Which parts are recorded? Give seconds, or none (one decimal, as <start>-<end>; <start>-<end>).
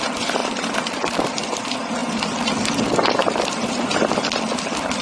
0.0-0.4; 1.6-2.0; 4.1-5.0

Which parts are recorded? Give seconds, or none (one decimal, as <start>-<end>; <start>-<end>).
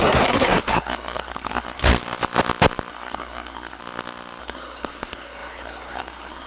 1.8-2.9; 3.8-4.4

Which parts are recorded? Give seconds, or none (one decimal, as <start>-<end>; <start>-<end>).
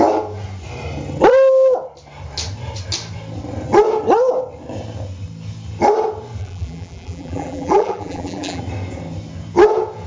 0.0-6.4; 8.6-10.1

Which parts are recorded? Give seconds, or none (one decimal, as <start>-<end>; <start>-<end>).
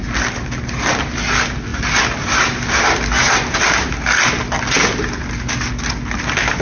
0.0-6.6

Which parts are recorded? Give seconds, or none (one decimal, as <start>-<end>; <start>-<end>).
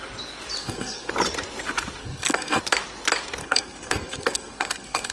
0.0-0.6; 1.1-2.0; 2.6-3.4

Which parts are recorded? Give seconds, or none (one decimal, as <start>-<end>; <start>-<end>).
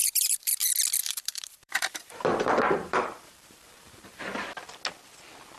0.6-1.0; 4.2-5.6